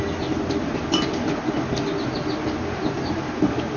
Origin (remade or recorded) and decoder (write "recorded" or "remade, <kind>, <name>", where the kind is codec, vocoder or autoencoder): recorded